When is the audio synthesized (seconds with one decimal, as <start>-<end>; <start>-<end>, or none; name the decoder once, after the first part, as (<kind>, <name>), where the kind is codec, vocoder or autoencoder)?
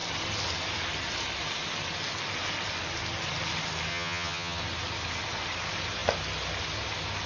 3.9-4.6 (vocoder, HiFi-GAN)